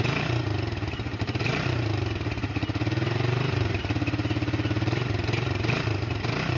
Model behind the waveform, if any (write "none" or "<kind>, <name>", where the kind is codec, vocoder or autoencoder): vocoder, BigVGAN v2